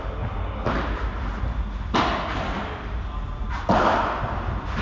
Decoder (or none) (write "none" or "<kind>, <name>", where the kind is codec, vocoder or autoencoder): none